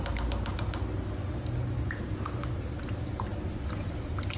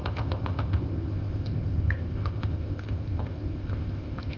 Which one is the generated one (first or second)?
second